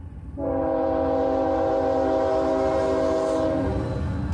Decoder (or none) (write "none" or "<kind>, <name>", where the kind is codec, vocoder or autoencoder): none